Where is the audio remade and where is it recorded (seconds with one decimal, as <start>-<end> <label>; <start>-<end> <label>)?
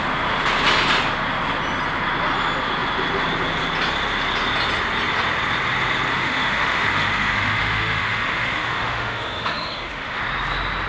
0.0-6.1 recorded; 6.1-10.2 remade; 10.2-10.9 recorded